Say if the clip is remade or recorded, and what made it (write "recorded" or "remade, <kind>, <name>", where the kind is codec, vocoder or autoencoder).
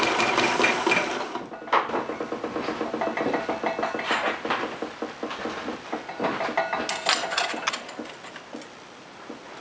recorded